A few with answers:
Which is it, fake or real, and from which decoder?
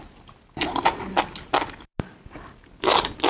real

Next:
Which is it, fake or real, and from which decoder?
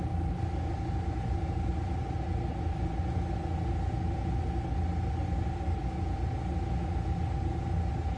real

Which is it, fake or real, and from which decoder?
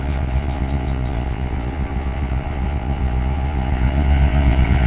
fake, vocoder, Vocos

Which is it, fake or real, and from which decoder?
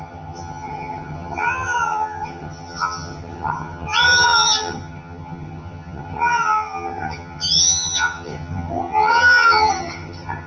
fake, vocoder, HiFi-GAN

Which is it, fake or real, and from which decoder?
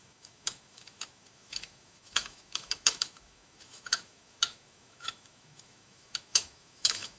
fake, autoencoder, DAC-VAE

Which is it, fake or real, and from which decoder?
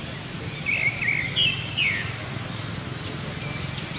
real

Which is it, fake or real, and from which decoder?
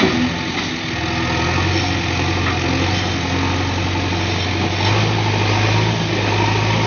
real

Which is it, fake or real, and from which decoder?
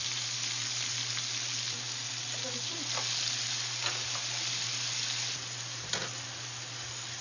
real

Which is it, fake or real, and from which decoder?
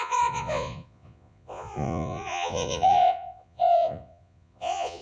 fake, vocoder, Vocos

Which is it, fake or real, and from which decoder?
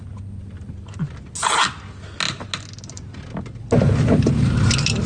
real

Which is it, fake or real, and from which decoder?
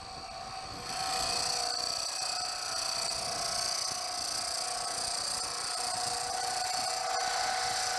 real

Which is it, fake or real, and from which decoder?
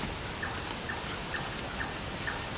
real